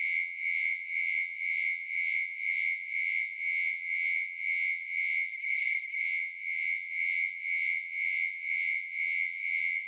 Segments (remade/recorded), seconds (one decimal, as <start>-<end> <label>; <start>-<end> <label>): 0.0-5.3 remade; 5.3-6.0 recorded; 6.0-9.9 remade